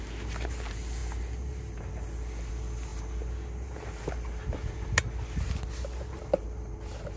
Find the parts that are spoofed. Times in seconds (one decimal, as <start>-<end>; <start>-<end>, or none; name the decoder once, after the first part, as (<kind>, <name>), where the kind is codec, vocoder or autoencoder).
none